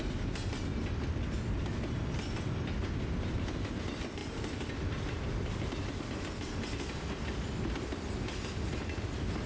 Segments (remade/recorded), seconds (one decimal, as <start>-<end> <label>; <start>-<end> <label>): 0.0-9.5 recorded